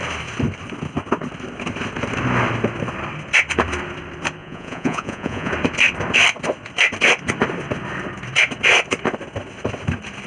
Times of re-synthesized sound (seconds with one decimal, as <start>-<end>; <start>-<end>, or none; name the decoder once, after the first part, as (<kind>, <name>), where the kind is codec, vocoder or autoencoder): 4.4-5.5 (vocoder, Vocos)